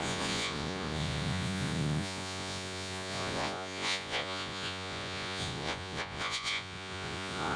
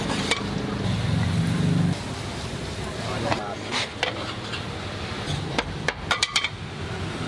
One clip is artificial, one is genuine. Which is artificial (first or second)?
first